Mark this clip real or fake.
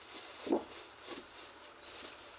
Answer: real